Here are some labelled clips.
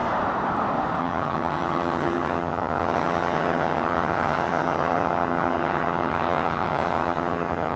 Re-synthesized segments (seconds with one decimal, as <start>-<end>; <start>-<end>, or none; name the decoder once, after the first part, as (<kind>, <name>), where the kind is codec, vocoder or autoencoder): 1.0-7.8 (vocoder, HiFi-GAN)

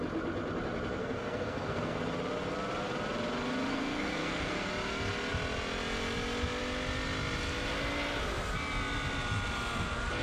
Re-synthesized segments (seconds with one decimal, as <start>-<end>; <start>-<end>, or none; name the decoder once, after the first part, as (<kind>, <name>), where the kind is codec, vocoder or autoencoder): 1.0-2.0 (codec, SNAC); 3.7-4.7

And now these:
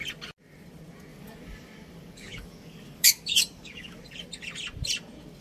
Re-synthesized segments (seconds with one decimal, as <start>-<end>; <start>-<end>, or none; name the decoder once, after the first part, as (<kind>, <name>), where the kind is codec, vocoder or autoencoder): 1.1-4.0 (codec, DAC)